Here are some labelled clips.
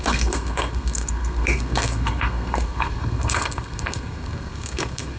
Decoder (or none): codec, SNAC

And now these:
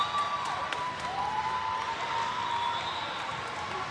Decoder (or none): vocoder, BigVGAN v2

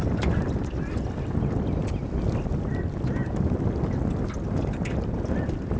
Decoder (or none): none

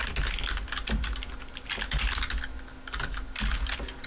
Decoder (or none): none